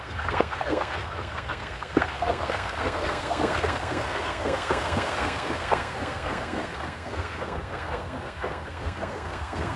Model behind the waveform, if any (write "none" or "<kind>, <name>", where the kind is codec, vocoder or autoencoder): codec, SNAC